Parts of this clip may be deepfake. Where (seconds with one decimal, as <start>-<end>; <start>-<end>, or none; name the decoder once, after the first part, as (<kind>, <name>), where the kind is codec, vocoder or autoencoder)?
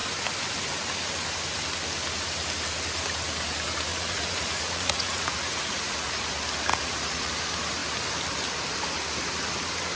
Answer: 3.9-6.1 (vocoder, Vocos); 6.7-7.3